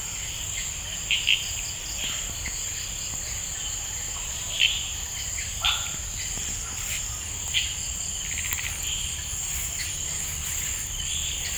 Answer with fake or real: real